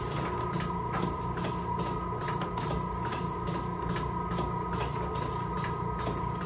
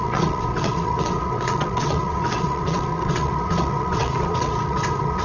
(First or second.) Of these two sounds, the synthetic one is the second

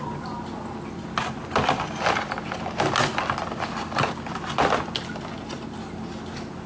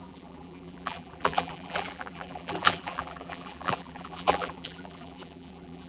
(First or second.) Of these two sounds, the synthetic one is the second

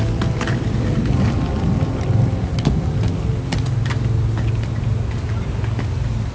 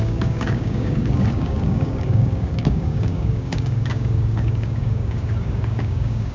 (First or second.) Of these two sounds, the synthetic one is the second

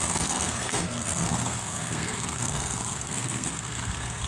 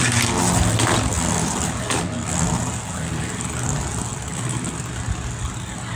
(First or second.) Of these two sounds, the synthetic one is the first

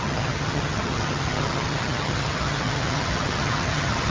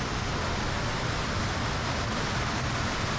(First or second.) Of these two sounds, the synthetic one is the first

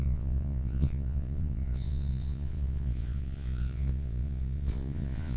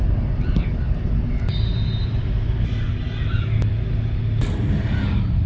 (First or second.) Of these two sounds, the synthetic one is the first